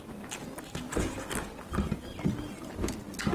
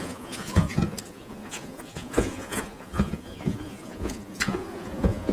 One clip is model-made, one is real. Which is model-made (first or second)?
second